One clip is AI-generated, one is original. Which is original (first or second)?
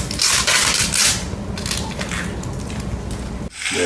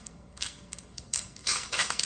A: first